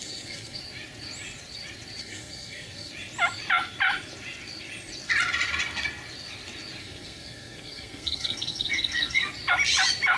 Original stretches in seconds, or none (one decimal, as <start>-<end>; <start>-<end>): 0.6-2.0; 2.9-6.8; 9.3-10.2